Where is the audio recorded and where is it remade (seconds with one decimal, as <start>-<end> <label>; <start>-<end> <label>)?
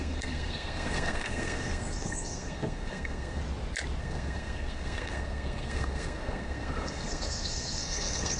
0.0-3.4 remade; 3.4-4.0 recorded; 4.0-8.4 remade